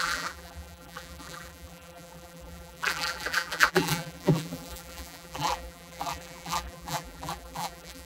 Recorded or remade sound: remade